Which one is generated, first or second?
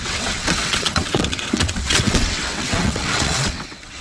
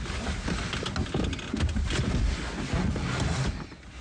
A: first